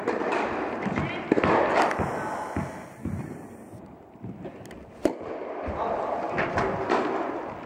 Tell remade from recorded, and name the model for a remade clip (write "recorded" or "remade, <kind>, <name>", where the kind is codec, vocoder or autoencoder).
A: recorded